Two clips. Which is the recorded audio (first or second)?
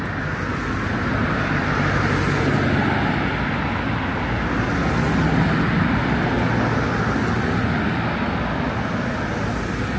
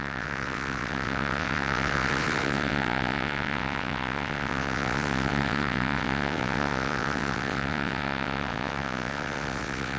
first